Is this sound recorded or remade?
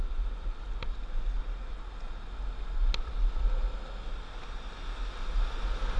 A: recorded